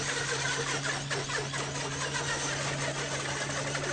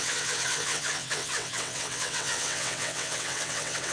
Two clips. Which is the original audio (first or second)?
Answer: first